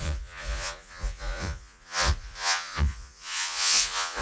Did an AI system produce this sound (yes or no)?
yes